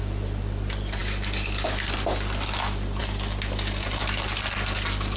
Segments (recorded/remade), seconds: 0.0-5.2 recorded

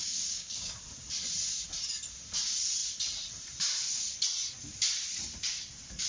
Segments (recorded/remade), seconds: 0.0-0.8 remade; 0.8-6.1 recorded

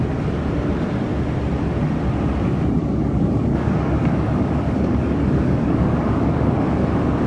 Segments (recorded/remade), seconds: 0.0-2.8 recorded; 2.8-7.3 remade

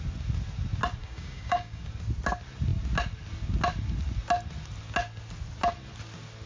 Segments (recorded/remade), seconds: 0.0-1.0 recorded; 1.0-1.8 remade; 1.8-6.5 recorded

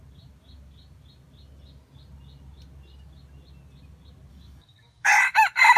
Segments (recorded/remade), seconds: 0.0-4.3 recorded; 4.3-5.1 remade; 5.1-5.8 recorded

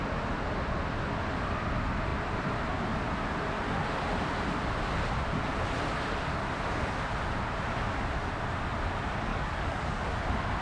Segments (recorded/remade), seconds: 0.0-9.3 recorded; 9.3-10.0 remade; 10.0-10.6 recorded

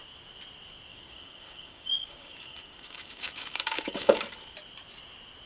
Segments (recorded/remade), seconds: 0.0-0.9 recorded; 0.9-4.2 remade; 4.2-5.5 recorded

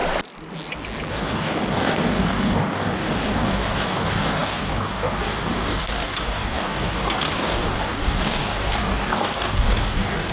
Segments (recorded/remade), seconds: 0.0-1.1 recorded; 1.1-10.3 remade